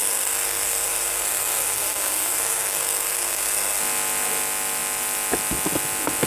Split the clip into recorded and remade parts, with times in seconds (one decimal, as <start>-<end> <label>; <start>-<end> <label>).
0.0-3.8 remade; 3.8-6.3 recorded